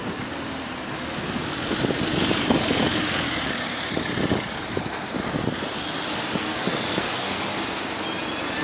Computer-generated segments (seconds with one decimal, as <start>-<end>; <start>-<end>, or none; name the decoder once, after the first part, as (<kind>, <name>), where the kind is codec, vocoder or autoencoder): 6.4-7.4 (codec, SNAC)